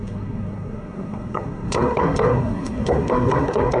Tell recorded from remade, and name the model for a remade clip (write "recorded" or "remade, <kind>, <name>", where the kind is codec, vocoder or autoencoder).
remade, codec, SNAC